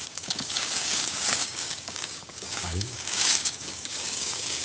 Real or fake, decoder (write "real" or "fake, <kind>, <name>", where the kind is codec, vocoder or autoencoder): fake, codec, DAC